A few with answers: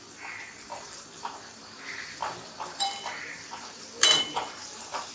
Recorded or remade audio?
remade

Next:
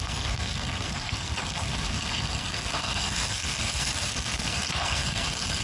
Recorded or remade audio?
remade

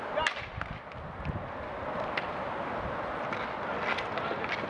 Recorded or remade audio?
recorded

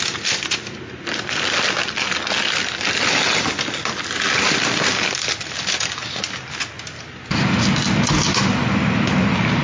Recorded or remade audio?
recorded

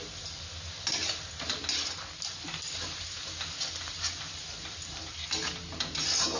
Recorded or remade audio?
recorded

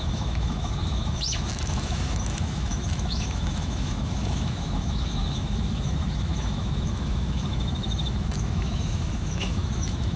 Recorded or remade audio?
remade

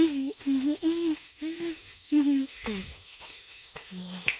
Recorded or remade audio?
remade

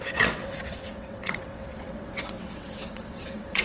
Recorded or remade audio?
remade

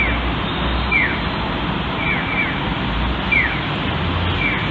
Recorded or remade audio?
recorded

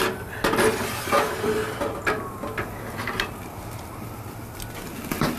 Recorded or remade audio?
recorded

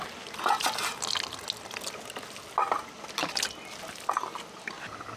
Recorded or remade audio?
recorded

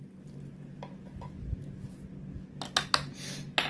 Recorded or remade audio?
recorded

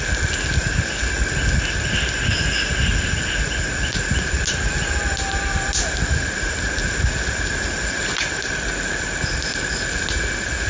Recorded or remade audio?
recorded